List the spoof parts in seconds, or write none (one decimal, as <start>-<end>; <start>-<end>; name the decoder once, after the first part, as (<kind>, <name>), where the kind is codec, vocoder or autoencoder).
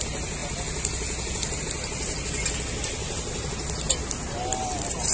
none